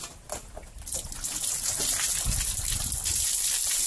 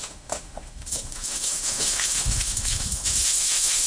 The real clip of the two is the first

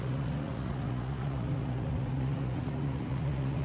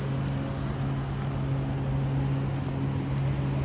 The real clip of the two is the second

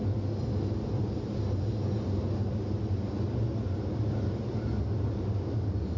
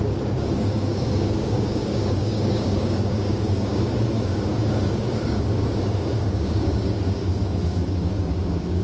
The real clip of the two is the first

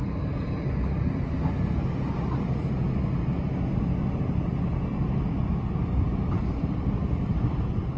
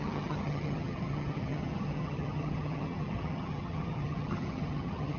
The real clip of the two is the first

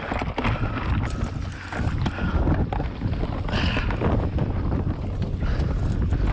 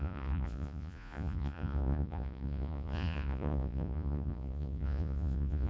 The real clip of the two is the first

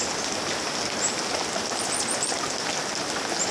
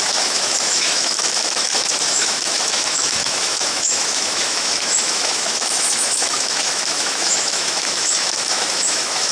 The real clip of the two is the first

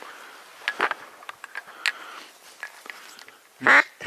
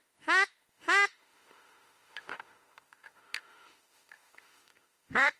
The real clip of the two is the first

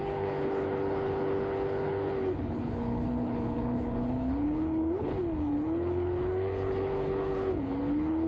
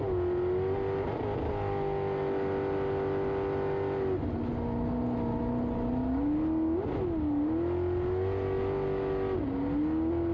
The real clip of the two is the second